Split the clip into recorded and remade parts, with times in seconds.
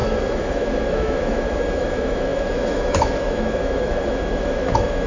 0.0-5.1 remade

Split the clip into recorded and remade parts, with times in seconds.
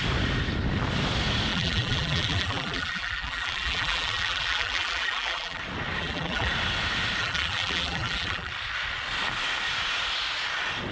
0.0-1.5 recorded; 1.5-5.6 remade; 5.6-6.0 recorded; 6.0-6.5 remade; 6.5-7.2 recorded; 7.2-8.5 remade; 8.5-10.9 recorded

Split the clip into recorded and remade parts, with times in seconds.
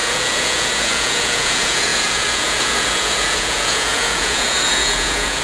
0.0-5.4 remade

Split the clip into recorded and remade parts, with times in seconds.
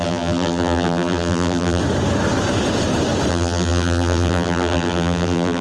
0.0-1.8 remade; 1.8-3.3 recorded; 3.3-5.6 remade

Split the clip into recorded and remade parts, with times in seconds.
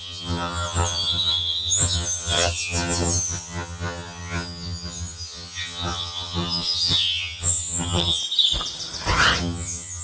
0.0-8.2 remade; 8.2-9.4 recorded; 9.4-10.0 remade